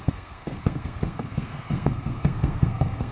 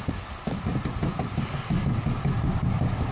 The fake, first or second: first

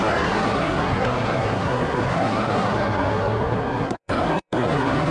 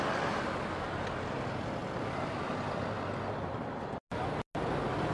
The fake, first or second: first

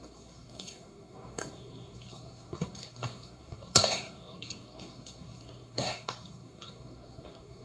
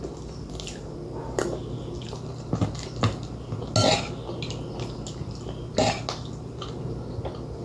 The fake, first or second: first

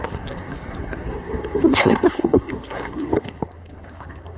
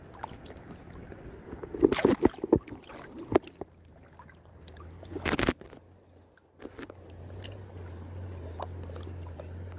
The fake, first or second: first